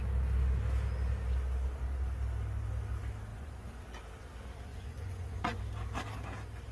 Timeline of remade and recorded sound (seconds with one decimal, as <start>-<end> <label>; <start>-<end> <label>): 0.0-3.3 recorded; 3.3-3.8 remade; 3.8-4.7 recorded; 4.7-5.6 remade; 5.6-6.7 recorded